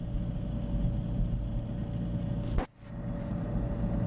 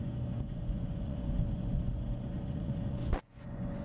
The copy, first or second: second